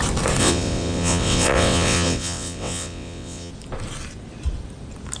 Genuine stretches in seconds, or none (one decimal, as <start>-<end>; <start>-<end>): 0.0-0.4; 3.5-5.2